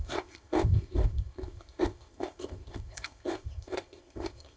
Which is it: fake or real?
fake